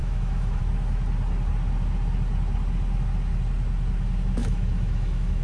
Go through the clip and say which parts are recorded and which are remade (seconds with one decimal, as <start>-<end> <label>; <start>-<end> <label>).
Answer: 0.0-0.6 remade; 0.6-4.4 recorded; 4.4-5.4 remade